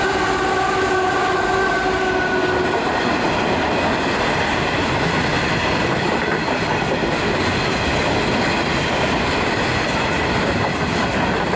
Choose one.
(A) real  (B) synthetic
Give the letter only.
A